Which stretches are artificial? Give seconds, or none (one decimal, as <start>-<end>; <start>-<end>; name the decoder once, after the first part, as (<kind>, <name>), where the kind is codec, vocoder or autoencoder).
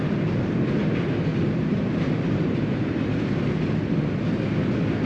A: 1.3-3.4 (vocoder, BigVGAN v2)